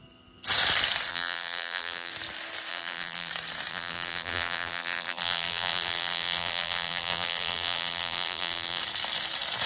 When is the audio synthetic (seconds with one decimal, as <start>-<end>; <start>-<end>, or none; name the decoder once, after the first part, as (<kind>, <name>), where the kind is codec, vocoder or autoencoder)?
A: 1.1-2.1 (vocoder, BigVGAN v2); 2.7-3.3; 3.7-8.8